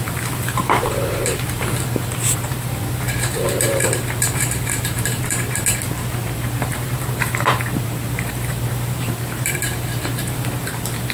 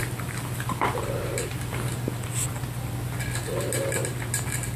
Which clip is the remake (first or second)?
first